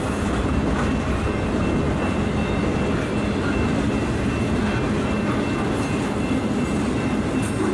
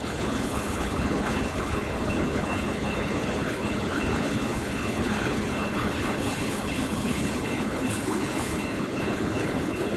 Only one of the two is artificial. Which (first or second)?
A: second